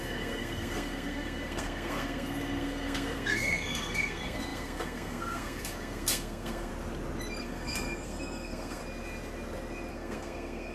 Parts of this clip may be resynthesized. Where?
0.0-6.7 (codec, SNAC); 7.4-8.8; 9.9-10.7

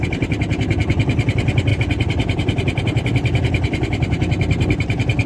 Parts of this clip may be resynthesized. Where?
none

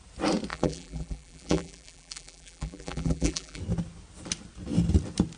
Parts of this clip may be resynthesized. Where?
0.5-3.6 (vocoder, BigVGAN v2)

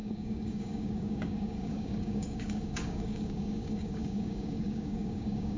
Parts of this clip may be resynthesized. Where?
0.0-5.6 (codec, DAC)